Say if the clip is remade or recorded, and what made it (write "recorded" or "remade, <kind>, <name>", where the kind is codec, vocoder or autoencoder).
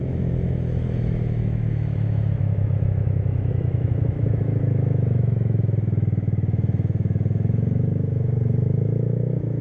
remade, autoencoder, DAC-VAE